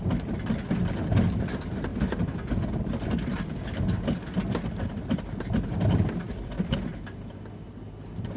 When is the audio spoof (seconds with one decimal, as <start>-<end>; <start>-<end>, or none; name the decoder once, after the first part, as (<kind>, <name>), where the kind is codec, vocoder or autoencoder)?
none